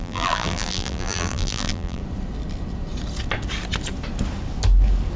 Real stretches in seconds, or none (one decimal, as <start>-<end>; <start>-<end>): 2.0-5.2

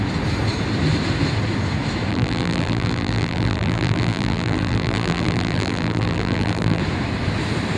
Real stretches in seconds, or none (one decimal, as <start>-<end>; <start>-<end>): 0.0-2.1; 6.8-7.8

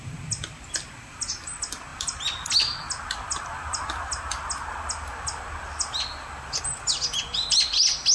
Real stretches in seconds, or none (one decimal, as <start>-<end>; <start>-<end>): 0.0-8.1

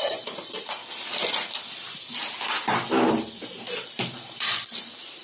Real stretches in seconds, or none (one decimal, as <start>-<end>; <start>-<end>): 0.8-3.9